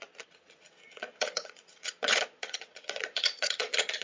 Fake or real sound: fake